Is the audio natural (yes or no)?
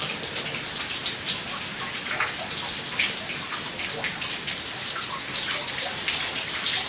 yes